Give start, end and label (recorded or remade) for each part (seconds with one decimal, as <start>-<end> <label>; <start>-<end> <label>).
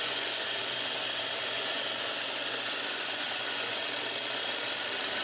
0.0-0.6 remade; 0.6-1.5 recorded; 1.5-3.8 remade; 3.8-5.2 recorded